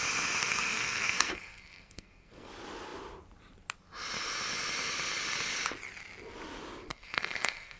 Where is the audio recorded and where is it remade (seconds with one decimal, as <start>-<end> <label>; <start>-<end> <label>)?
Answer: 0.0-0.4 recorded; 0.4-2.5 remade; 2.5-6.9 recorded; 6.9-7.8 remade